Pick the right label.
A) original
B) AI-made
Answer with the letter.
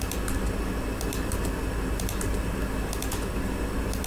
A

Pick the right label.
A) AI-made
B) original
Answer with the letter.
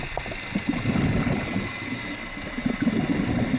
B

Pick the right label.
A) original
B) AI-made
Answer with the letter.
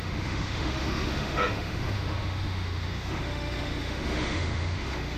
B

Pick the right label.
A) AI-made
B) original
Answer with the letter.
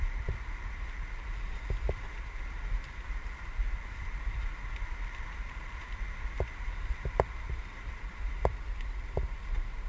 B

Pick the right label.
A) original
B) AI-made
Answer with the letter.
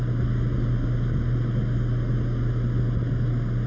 A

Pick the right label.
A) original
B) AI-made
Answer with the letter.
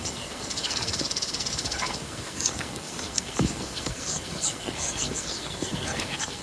B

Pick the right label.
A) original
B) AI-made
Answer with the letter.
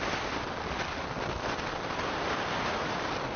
A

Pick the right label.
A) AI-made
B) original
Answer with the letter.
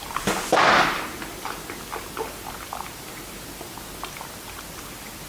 B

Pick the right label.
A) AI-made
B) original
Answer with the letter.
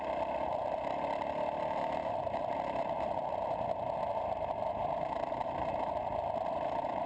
B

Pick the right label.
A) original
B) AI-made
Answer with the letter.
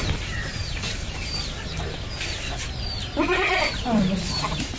B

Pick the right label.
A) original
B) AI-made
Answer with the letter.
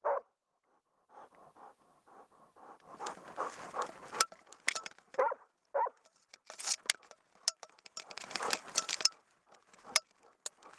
A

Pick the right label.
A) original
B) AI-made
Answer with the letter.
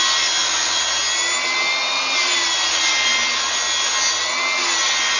A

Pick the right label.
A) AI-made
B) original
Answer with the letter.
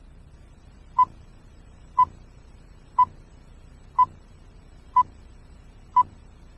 A